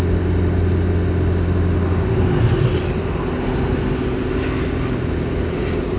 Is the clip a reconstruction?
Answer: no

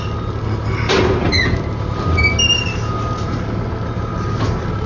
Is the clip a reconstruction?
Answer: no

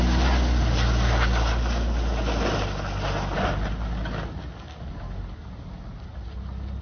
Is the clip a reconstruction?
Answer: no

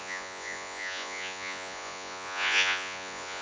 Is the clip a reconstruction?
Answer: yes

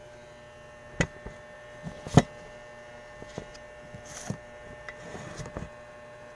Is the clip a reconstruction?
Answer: no